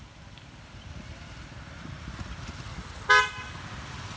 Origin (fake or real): real